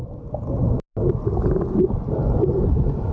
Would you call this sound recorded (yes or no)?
yes